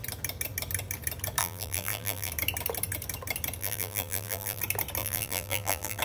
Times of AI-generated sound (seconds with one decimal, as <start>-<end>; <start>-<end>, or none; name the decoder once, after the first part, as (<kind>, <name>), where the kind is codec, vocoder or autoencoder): 1.4-2.3 (vocoder, BigVGAN v2); 3.6-4.6; 5.0-6.0